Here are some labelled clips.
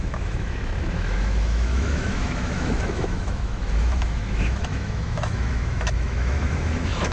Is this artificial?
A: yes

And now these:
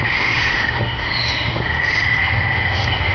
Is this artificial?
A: yes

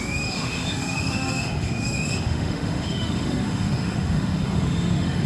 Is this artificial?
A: yes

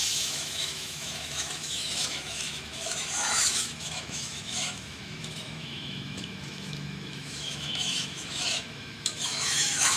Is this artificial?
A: yes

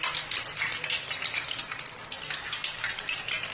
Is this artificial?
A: no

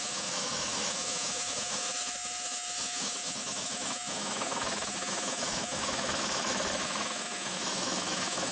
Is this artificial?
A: yes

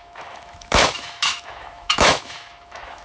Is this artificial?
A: yes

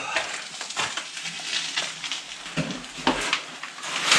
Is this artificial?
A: no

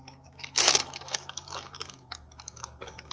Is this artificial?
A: yes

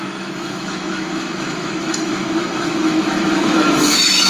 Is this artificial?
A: yes